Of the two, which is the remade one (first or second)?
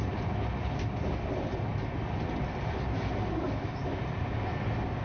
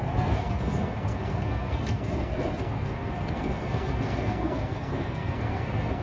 second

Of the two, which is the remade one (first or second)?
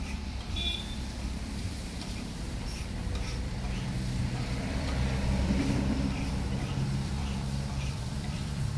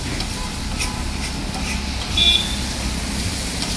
first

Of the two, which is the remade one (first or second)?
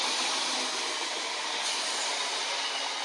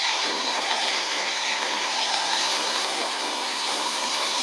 second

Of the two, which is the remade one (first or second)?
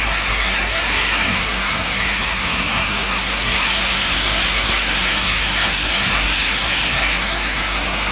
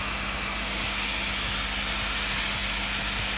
first